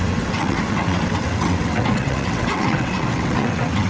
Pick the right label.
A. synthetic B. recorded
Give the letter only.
A